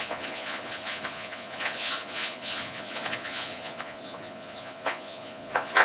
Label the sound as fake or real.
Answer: fake